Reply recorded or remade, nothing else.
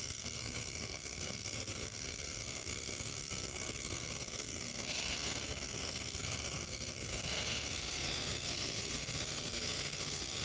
remade